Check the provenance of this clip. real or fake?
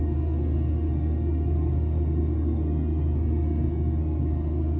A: fake